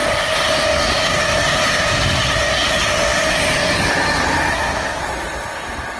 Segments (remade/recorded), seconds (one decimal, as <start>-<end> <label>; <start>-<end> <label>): 0.0-4.5 recorded; 4.5-5.0 remade; 5.0-6.0 recorded